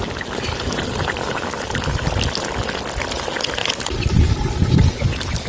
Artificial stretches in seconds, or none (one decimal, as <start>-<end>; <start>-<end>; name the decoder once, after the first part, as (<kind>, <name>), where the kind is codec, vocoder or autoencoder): none